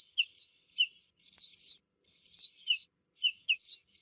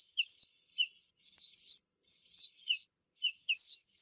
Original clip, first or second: first